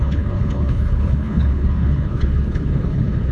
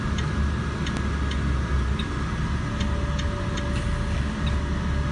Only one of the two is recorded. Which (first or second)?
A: second